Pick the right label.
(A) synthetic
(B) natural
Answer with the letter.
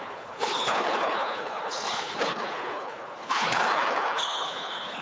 A